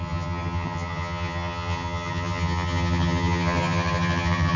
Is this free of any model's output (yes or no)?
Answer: no